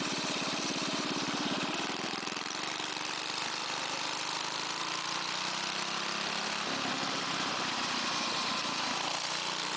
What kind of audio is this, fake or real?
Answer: real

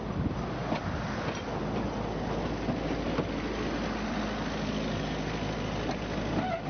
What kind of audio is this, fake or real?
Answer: real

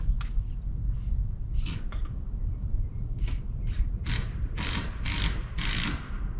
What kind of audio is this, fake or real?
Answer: real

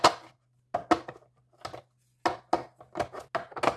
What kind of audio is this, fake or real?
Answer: real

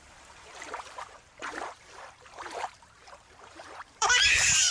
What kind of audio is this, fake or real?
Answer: fake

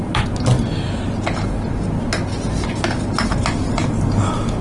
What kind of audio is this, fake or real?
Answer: real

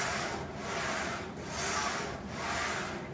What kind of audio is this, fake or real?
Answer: real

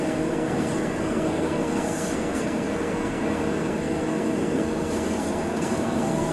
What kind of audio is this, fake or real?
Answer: fake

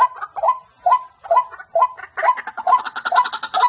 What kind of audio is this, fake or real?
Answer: real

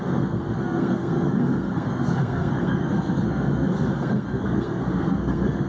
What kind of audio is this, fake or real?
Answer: fake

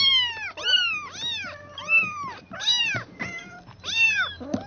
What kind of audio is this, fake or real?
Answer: real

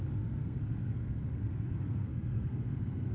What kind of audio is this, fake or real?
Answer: fake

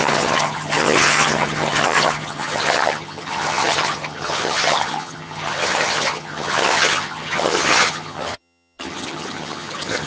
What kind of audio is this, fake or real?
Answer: fake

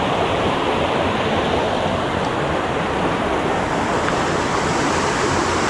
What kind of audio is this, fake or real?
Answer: real